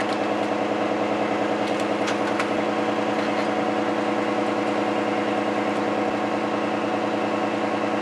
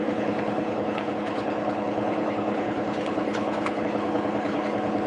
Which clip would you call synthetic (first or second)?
second